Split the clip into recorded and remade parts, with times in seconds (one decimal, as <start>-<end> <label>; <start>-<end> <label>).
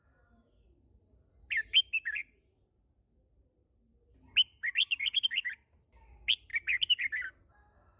0.0-8.0 recorded